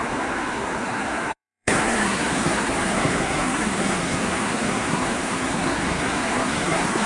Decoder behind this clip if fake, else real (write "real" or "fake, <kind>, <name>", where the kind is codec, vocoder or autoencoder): fake, codec, SNAC